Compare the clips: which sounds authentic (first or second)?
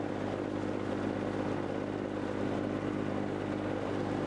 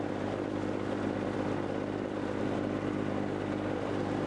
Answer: first